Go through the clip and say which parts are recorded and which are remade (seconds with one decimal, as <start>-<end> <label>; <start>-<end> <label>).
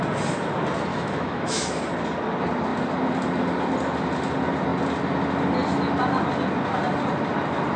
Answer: 0.0-0.9 recorded; 0.9-1.8 remade; 1.8-7.8 recorded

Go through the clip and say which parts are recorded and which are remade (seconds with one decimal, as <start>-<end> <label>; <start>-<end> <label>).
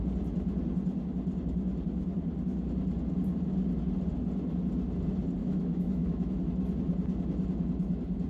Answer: 0.0-5.4 recorded; 5.4-6.4 remade; 6.4-8.3 recorded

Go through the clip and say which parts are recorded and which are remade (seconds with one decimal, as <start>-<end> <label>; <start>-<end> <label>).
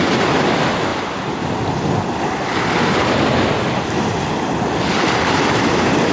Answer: 0.0-6.1 recorded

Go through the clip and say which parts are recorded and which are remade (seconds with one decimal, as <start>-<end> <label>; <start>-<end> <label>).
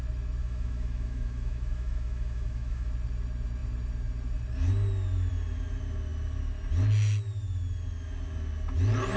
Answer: 0.0-0.4 recorded; 0.4-2.9 remade; 2.9-9.2 recorded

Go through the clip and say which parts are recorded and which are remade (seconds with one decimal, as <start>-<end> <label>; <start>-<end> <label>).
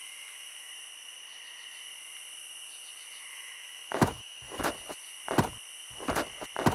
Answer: 0.0-0.7 remade; 0.7-3.3 recorded; 3.3-4.6 remade; 4.6-6.7 recorded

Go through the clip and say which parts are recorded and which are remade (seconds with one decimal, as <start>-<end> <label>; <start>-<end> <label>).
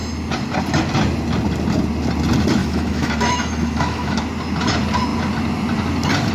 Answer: 0.0-2.6 recorded; 2.6-4.2 remade; 4.2-6.3 recorded